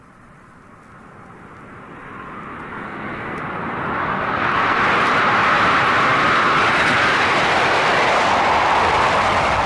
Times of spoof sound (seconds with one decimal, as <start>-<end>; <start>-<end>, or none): 2.7-3.4; 4.0-4.8